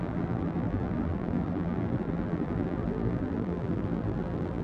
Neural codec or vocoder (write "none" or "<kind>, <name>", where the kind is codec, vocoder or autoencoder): vocoder, BigVGAN v2